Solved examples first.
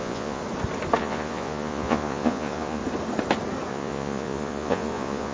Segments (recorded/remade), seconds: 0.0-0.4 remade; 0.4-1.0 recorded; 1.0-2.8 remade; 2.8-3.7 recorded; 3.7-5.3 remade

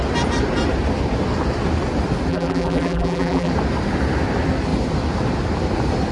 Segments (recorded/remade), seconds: 0.0-2.3 recorded; 2.3-3.5 remade; 3.5-6.1 recorded